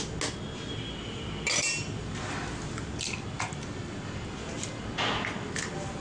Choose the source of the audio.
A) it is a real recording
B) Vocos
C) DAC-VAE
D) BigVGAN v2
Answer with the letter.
A